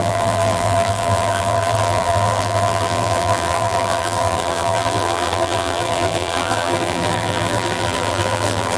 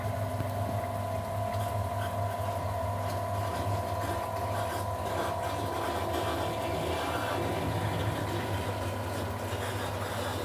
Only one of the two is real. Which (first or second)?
second